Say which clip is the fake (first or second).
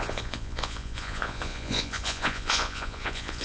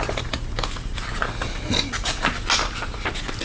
first